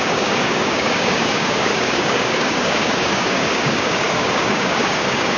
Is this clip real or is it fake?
fake